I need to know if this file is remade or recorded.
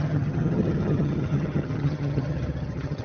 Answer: remade